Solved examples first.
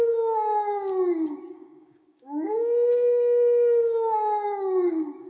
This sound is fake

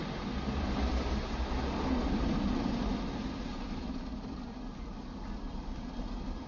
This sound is real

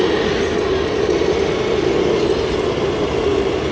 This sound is real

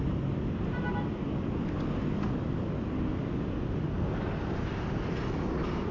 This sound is real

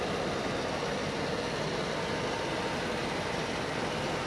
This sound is real